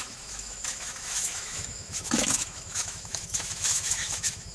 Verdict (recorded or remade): remade